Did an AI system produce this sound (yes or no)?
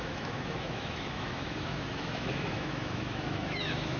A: yes